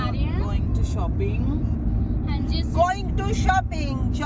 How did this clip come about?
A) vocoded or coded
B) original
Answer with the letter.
B